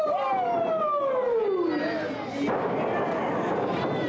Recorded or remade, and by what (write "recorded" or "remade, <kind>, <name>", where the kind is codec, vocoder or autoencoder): recorded